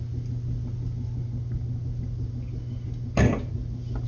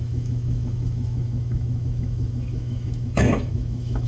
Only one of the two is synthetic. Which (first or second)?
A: second